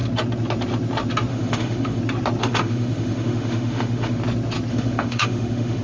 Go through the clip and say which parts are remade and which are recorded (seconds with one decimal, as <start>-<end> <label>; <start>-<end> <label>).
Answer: 0.0-1.3 recorded; 1.3-2.0 remade; 2.0-2.4 recorded; 2.4-4.2 remade; 4.2-4.7 recorded; 4.7-5.8 remade